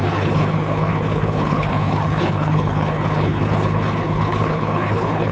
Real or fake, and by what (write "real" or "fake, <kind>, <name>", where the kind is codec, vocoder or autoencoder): fake, codec, HILCodec